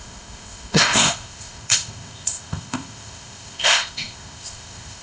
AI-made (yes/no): yes